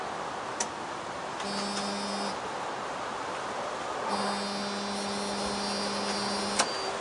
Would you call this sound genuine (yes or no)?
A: yes